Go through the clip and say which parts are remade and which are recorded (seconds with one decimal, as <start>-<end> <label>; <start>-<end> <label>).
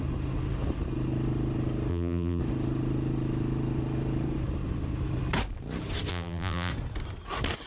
0.0-1.9 recorded; 1.9-2.4 remade; 2.4-6.1 recorded; 6.1-6.7 remade; 6.7-7.7 recorded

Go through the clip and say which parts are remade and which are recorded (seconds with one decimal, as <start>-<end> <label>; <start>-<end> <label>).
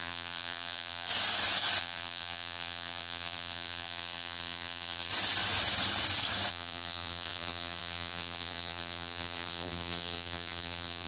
0.0-1.1 remade; 1.1-1.8 recorded; 1.8-5.1 remade; 5.1-6.5 recorded; 6.5-11.1 remade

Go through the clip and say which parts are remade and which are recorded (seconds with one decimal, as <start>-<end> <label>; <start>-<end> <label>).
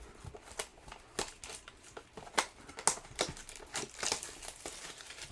0.0-5.3 recorded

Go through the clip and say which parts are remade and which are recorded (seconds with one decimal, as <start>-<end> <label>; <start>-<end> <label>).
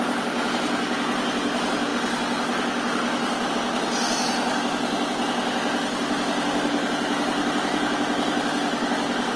0.0-9.4 recorded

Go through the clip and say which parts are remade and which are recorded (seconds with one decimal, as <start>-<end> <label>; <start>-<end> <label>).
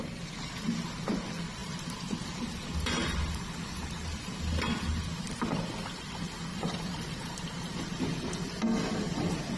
0.0-6.5 recorded; 6.5-7.6 remade; 7.6-9.6 recorded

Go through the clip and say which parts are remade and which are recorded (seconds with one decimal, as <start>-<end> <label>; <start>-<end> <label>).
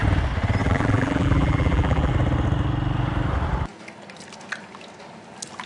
0.0-0.6 recorded; 0.6-2.1 remade; 2.1-5.7 recorded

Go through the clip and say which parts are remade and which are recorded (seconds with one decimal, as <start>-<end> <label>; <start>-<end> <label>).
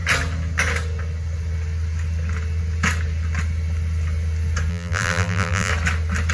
0.0-4.7 recorded; 4.7-5.7 remade; 5.7-6.3 recorded